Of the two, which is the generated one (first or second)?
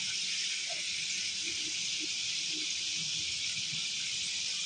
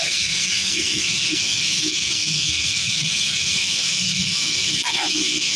second